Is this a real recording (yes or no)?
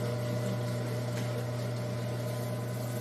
yes